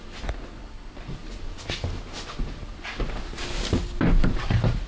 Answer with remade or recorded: recorded